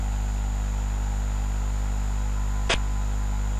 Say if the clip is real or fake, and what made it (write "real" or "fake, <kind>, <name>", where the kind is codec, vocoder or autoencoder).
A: real